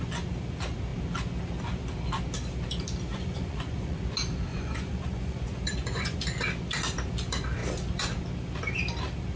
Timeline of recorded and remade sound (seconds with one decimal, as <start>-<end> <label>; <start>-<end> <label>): 0.0-3.1 recorded; 3.1-4.0 remade; 4.0-4.5 recorded; 4.5-6.2 remade; 6.2-9.4 recorded

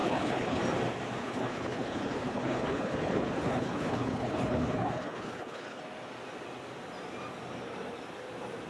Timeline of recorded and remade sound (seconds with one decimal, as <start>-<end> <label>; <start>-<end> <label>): 0.0-0.6 remade; 0.6-1.2 recorded; 1.2-5.8 remade; 5.8-8.7 recorded

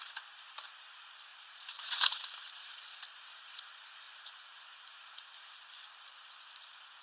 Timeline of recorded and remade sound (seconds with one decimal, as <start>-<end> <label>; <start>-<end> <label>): 0.0-1.3 recorded; 1.3-5.5 remade; 5.5-7.0 recorded

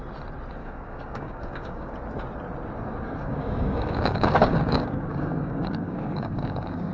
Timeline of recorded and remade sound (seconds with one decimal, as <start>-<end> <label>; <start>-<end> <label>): 0.0-0.6 recorded; 0.6-1.9 remade; 1.9-3.2 recorded; 3.2-6.9 remade